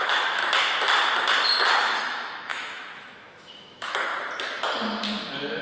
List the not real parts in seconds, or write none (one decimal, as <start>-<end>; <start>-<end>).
0.0-0.4; 1.8-4.1